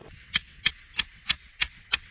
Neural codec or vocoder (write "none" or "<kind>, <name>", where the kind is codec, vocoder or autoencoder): vocoder, WaveNeXt